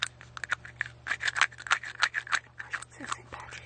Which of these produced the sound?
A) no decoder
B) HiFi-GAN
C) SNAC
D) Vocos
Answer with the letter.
A